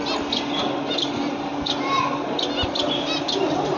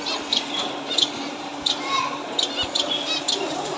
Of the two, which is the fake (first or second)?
second